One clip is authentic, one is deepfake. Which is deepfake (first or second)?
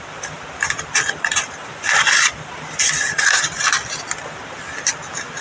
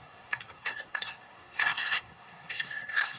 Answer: second